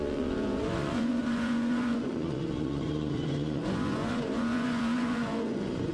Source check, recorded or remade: remade